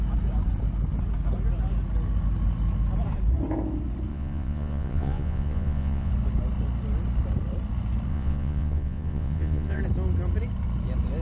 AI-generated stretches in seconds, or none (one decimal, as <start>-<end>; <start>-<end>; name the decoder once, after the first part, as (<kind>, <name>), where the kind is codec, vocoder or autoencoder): 4.1-6.1 (vocoder, Vocos); 8.1-9.8